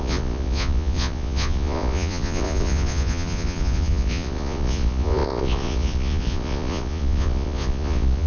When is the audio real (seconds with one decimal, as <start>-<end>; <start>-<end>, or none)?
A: none